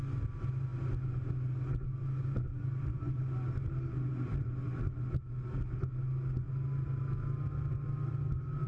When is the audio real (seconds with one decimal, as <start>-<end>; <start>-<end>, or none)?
0.0-2.5; 3.2-4.1; 5.2-8.7